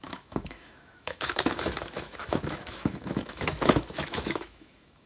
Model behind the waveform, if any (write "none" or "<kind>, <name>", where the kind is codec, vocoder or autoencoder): autoencoder, DAC-VAE